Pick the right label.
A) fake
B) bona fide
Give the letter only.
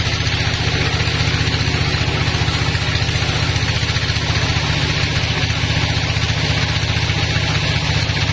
B